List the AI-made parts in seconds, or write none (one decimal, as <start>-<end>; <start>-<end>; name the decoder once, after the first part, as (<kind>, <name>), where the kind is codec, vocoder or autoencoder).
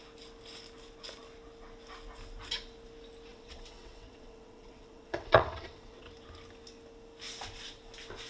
3.3-6.1 (vocoder, WaveNeXt)